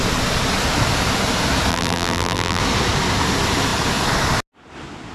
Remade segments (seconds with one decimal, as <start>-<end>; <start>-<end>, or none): 1.7-2.6